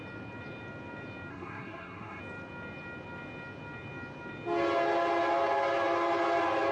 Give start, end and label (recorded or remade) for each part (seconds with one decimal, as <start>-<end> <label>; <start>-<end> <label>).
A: 0.0-1.3 recorded; 1.3-2.2 remade; 2.2-6.7 recorded